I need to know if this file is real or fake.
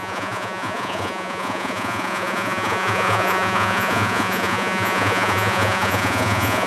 fake